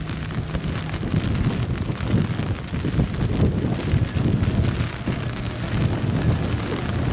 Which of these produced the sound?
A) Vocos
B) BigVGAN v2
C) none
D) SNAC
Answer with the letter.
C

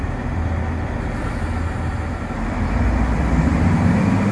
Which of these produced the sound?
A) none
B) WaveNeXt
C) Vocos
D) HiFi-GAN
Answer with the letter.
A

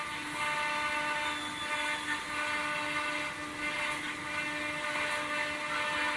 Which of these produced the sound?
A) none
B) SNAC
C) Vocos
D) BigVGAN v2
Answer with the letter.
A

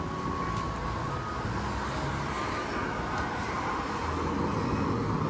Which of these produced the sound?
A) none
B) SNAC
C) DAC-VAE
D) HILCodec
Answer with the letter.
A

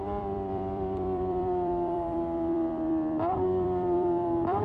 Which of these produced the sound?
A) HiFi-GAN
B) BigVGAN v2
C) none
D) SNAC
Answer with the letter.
B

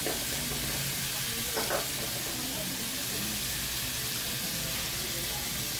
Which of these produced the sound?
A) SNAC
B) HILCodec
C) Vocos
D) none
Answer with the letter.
D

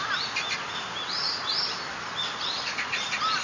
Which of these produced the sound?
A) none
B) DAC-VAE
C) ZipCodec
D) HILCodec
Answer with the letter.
A